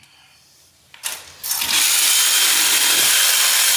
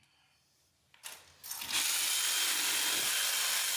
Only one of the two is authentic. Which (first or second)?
second